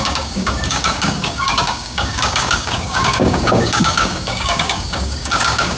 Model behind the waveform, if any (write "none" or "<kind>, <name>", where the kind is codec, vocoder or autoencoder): codec, DAC